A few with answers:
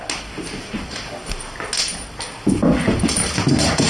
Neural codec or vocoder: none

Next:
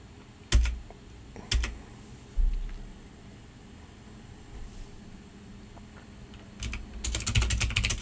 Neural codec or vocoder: none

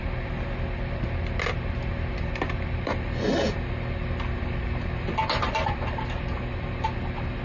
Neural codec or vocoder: none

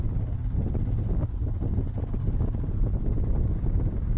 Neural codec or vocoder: none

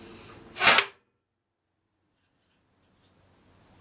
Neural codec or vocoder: none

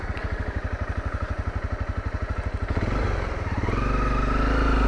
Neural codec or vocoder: none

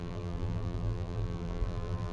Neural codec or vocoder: vocoder, BigVGAN v2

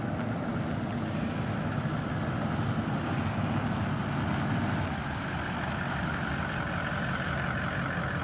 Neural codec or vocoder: none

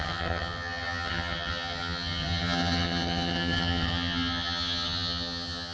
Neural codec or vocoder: vocoder, HiFi-GAN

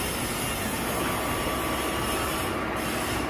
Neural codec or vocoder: none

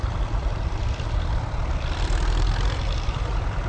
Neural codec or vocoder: none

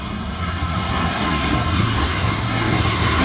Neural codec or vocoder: codec, SNAC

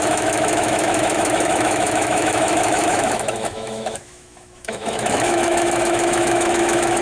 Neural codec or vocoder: autoencoder, DAC-VAE